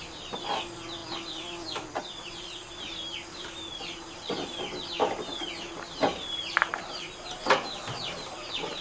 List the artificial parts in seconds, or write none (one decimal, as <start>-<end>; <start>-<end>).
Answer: none

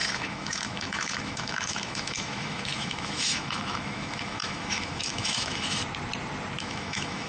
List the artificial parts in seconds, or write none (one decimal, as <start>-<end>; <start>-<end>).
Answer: 0.0-5.8; 6.6-7.3

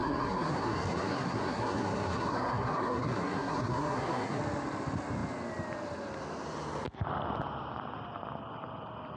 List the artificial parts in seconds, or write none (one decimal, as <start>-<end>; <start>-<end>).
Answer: 0.0-4.4

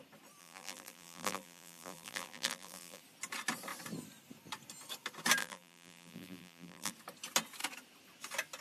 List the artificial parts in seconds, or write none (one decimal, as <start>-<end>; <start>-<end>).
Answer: 0.4-3.0; 5.4-6.9

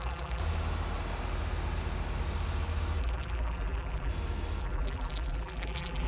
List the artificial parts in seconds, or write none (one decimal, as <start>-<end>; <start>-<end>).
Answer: 0.0-0.4; 3.0-4.1; 4.6-6.1

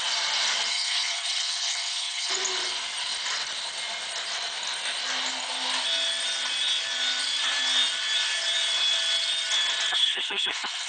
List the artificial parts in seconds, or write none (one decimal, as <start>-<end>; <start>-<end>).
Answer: 0.7-2.3; 9.9-10.9

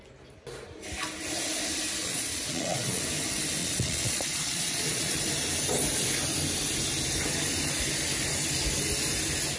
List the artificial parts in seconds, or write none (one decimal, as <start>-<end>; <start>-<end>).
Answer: 2.0-3.0; 3.6-5.2

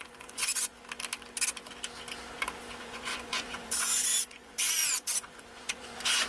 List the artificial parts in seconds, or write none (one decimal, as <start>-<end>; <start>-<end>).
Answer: 0.0-0.7; 2.8-6.3